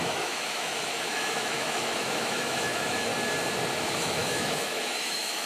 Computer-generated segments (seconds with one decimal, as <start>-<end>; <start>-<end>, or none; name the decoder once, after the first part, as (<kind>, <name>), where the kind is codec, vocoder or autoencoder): 0.0-3.1 (autoencoder, DAC-VAE); 3.9-5.5